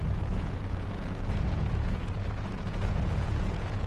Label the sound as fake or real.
fake